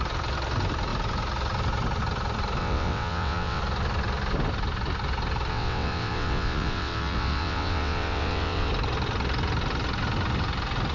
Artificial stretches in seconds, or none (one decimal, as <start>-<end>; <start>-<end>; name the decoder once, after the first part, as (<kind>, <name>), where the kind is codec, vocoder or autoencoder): 2.6-3.6 (vocoder, WaveNeXt); 5.5-8.7